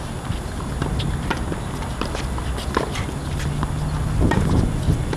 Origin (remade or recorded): recorded